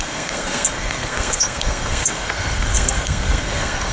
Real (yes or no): no